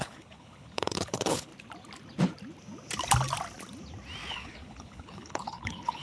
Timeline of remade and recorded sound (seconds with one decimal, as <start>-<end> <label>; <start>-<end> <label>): 0.0-1.5 remade; 1.5-4.3 recorded; 4.3-6.0 remade